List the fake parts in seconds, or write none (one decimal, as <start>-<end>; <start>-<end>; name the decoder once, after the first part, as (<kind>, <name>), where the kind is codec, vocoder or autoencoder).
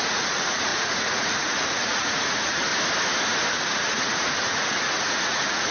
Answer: 0.0-2.7 (vocoder, Vocos); 3.5-5.7